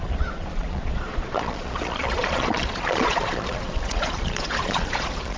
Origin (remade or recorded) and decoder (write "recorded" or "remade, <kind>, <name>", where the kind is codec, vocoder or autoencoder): remade, vocoder, Vocos